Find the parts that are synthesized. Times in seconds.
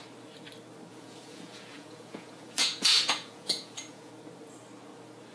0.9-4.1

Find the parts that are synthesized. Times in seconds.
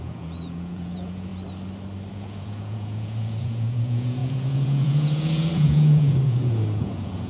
0.0-1.3; 2.1-7.3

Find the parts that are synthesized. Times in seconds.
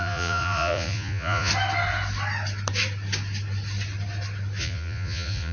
0.0-1.5; 4.6-5.5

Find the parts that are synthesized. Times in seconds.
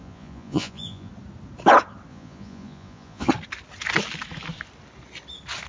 0.0-1.1; 2.1-3.3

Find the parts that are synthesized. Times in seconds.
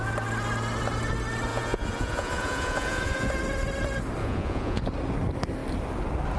1.5-3.3; 4.2-4.8